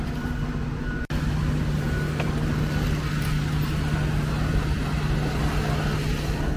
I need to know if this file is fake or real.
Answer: real